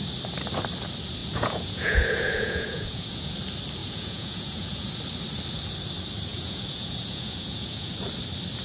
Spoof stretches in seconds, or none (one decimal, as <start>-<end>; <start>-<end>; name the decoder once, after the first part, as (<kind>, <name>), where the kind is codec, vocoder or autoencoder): 1.2-3.3 (vocoder, Vocos); 3.8-4.9; 6.3-7.9